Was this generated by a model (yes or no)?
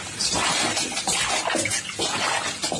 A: no